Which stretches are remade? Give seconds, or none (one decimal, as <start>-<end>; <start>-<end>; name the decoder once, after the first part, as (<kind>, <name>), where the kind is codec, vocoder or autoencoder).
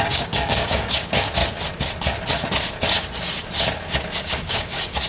0.0-1.4 (codec, DAC); 4.2-5.1